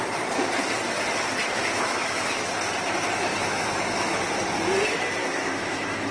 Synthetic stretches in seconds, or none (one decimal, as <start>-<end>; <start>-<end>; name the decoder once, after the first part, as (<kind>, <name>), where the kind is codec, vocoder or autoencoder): 1.4-2.5 (autoencoder, DAC-VAE); 3.3-4.2; 5.2-6.1